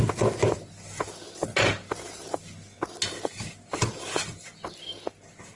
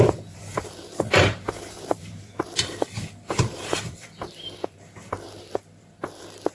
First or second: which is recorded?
first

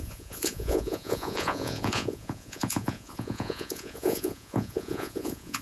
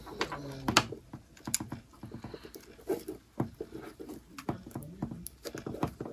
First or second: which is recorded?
second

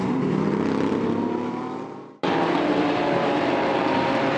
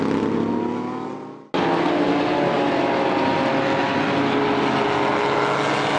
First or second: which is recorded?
second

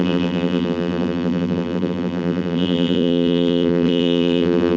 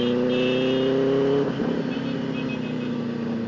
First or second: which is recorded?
second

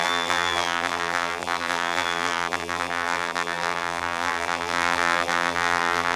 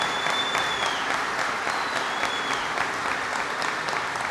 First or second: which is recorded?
second